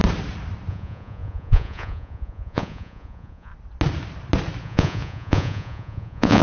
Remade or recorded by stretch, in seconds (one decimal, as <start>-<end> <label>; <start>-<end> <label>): 0.0-0.7 recorded; 0.7-3.5 remade; 3.5-4.6 recorded; 4.6-6.4 remade